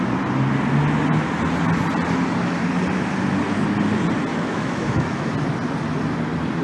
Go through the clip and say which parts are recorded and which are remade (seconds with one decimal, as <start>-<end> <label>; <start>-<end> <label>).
0.0-4.3 recorded; 4.3-5.3 remade; 5.3-6.6 recorded